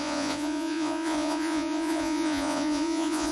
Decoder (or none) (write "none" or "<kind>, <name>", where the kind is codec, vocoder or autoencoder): vocoder, Vocos